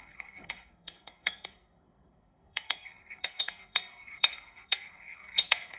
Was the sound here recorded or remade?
remade